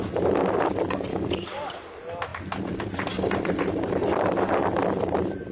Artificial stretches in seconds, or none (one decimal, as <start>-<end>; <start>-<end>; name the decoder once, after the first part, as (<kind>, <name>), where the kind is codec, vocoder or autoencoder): 1.1-1.7 (codec, DAC)